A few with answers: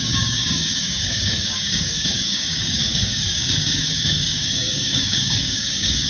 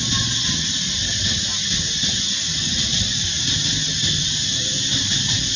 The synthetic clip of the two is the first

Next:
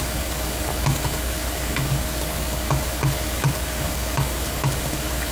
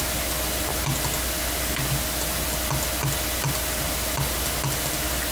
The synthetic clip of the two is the first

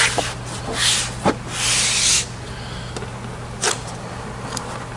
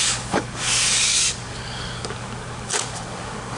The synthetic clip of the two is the second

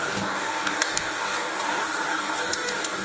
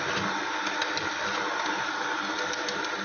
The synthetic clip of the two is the first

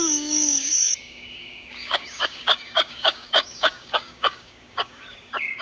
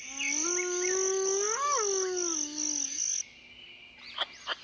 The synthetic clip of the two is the first